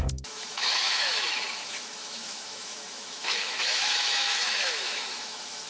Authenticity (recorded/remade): remade